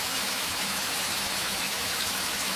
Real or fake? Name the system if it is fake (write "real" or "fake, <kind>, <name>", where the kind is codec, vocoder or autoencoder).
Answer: fake, autoencoder, DAC-VAE